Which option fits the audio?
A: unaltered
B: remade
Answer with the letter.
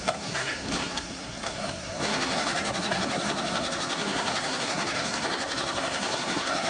B